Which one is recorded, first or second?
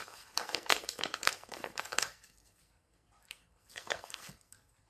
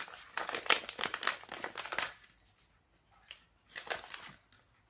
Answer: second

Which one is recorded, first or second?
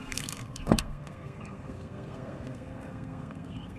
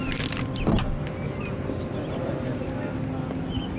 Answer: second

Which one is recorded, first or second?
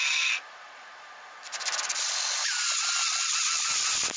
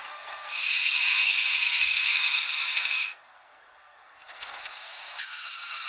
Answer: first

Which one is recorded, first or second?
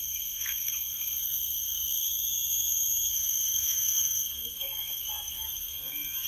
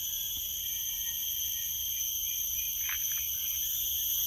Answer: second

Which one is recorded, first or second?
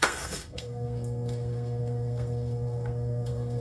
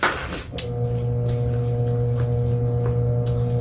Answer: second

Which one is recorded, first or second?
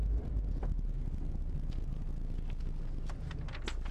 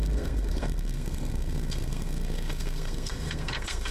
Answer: first